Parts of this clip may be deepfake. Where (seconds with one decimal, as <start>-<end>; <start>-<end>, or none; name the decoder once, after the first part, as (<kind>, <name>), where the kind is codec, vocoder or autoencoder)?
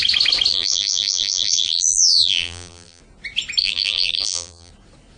0.5-3.0 (vocoder, BigVGAN v2); 3.6-4.7